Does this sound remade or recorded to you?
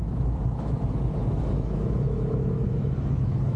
remade